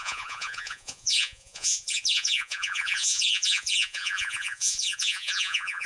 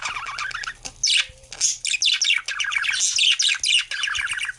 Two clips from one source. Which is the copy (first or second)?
first